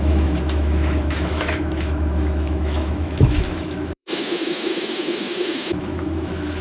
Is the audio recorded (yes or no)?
no